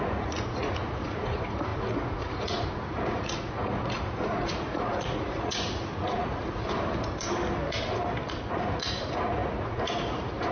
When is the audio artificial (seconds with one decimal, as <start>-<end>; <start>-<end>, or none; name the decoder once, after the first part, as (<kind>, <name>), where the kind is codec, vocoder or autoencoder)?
0.0-6.6 (vocoder, Vocos); 8.5-10.5